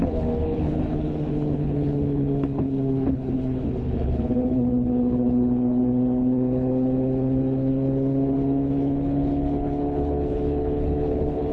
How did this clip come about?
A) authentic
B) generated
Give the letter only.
B